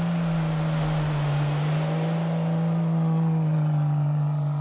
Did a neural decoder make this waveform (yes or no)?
no